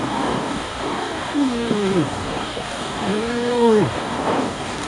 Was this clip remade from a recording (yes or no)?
yes